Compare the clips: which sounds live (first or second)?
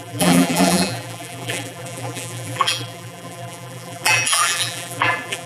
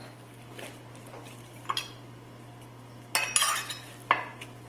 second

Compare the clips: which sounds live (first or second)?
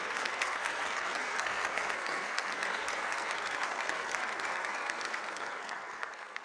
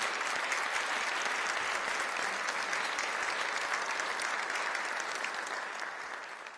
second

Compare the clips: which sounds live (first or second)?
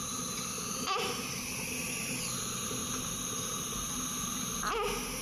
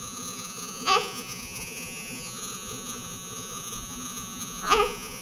first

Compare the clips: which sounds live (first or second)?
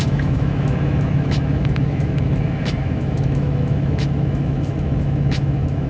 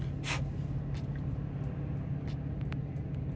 second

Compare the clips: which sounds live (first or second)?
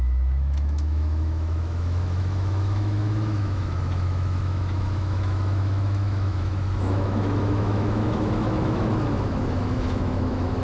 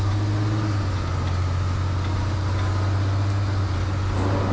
second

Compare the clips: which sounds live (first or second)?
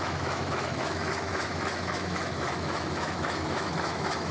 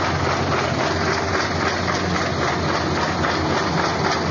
second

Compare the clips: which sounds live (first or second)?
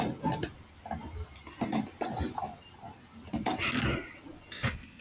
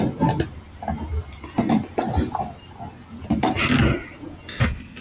second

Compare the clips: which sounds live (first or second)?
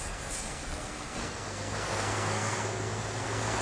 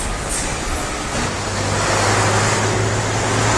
second